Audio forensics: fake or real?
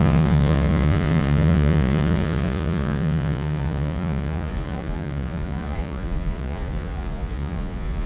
fake